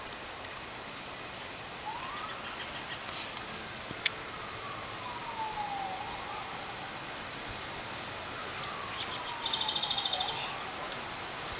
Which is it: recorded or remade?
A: recorded